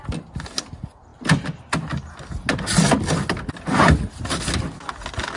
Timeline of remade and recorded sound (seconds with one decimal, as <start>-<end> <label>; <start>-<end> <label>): 0.0-5.4 recorded